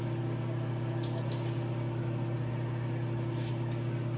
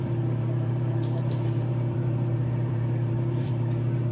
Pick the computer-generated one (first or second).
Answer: second